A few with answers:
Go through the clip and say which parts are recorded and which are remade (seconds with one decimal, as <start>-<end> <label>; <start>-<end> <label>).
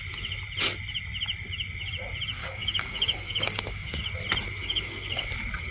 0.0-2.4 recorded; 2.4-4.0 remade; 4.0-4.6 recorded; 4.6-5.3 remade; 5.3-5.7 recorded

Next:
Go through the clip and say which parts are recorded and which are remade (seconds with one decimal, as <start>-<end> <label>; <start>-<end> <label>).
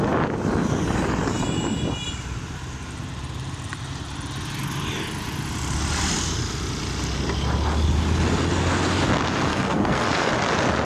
0.0-9.5 recorded; 9.5-10.3 remade; 10.3-10.8 recorded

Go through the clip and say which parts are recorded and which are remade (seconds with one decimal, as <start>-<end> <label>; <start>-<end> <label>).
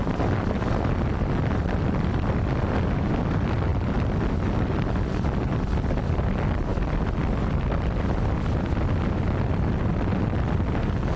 0.0-11.2 recorded